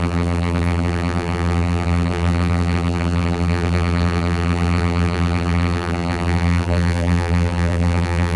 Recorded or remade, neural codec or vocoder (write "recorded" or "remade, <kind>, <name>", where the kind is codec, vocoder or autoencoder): remade, vocoder, BigVGAN v2